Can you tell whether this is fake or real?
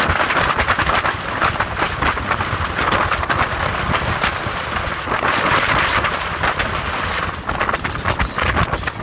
real